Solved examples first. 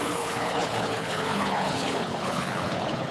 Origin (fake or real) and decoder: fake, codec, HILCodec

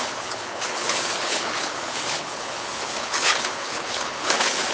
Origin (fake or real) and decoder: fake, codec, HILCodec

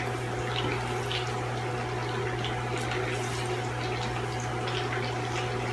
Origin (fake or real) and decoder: real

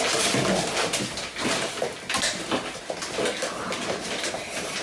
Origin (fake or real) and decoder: real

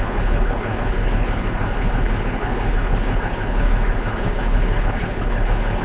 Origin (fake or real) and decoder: fake, codec, HILCodec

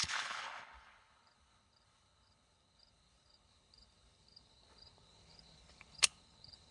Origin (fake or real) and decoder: fake, codec, HILCodec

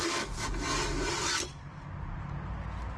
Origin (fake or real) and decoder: real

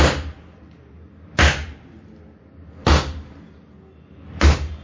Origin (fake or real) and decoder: real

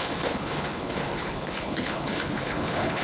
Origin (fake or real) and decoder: fake, codec, HILCodec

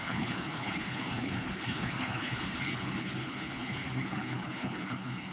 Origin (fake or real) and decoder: fake, codec, HILCodec